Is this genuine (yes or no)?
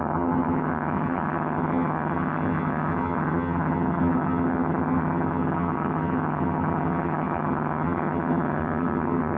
no